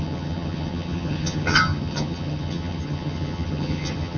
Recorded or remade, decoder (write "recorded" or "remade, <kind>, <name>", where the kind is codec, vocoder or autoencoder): remade, vocoder, HiFi-GAN